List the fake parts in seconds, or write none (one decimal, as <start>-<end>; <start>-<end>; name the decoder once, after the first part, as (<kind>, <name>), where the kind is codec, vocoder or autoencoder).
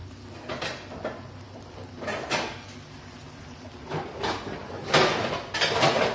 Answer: none